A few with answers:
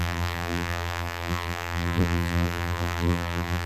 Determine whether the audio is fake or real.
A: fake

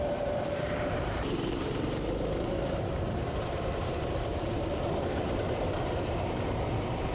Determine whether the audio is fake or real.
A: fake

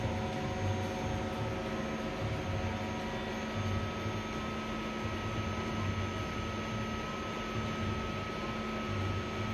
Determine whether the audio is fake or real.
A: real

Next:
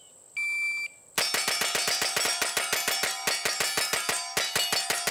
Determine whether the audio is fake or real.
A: real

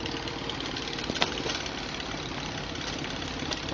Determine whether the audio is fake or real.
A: fake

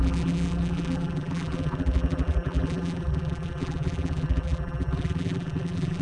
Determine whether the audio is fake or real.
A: fake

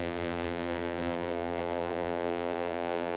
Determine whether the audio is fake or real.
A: fake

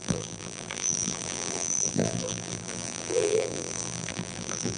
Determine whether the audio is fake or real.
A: fake